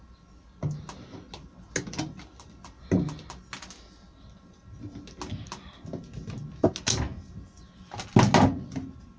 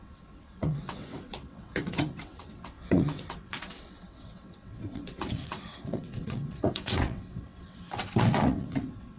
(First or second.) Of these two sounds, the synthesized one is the second